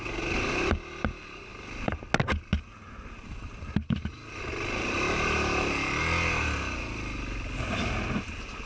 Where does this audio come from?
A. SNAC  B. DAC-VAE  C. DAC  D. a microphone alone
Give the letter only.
D